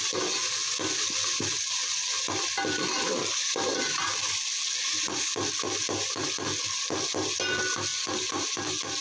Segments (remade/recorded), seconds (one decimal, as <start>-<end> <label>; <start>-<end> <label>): 0.0-9.0 recorded